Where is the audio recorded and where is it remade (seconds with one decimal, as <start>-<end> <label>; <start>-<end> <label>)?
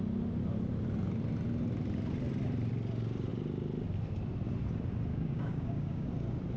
0.0-5.1 recorded; 5.1-6.1 remade; 6.1-6.6 recorded